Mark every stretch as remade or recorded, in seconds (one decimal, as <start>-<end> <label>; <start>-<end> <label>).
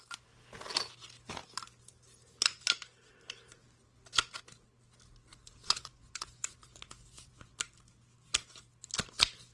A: 0.0-5.3 recorded; 5.3-7.6 remade; 7.6-9.5 recorded